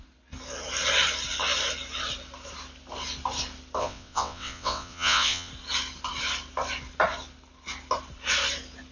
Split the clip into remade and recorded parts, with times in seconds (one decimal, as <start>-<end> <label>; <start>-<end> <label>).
0.0-3.8 recorded; 3.8-5.5 remade; 5.5-8.9 recorded